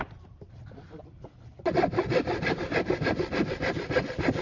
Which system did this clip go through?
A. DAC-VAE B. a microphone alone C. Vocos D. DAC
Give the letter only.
B